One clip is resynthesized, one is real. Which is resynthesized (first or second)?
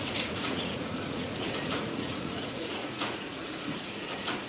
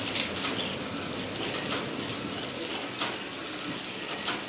first